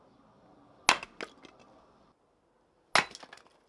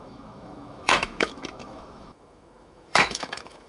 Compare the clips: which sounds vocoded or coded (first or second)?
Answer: second